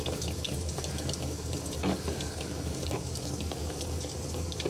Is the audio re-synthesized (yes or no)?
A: yes